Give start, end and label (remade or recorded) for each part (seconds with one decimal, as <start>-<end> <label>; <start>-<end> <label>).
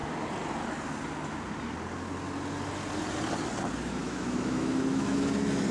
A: 0.0-4.0 recorded; 4.0-5.3 remade; 5.3-5.7 recorded